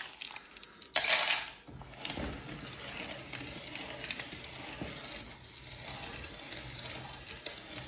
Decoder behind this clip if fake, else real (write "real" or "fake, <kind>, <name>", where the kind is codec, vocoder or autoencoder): real